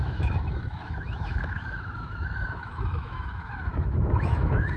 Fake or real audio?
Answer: fake